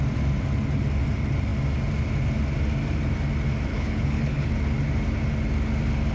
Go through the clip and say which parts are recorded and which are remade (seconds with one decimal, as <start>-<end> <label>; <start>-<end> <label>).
0.0-3.7 recorded; 3.7-4.5 remade; 4.5-6.1 recorded